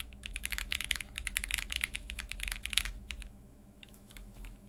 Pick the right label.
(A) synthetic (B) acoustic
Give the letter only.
A